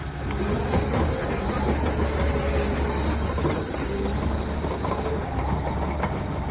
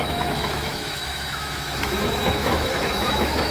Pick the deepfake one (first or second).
second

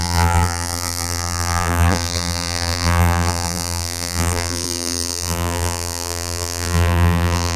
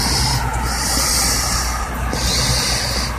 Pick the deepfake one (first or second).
first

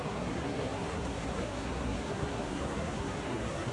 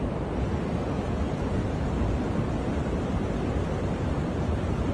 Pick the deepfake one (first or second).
first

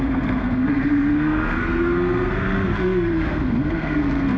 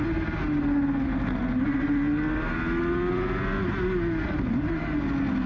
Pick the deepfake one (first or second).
first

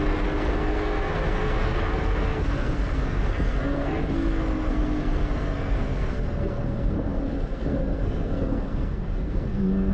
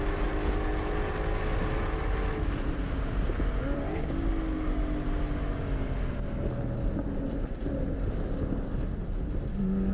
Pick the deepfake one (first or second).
first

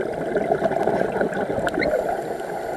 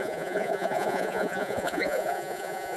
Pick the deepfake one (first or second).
second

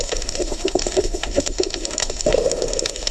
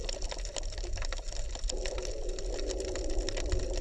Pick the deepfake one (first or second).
first